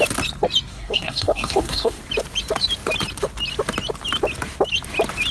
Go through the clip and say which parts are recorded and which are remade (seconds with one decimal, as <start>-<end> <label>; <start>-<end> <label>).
0.0-0.7 recorded; 0.7-2.0 remade; 2.0-5.3 recorded

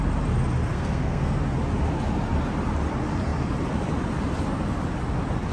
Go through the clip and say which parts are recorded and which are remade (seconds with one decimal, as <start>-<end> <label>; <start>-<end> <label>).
0.0-0.7 recorded; 0.7-1.4 remade; 1.4-5.5 recorded

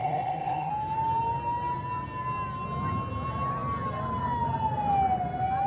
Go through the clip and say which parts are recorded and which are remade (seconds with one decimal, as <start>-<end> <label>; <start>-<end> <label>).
0.0-0.7 remade; 0.7-5.7 recorded